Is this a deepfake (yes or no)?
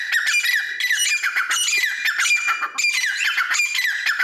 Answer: no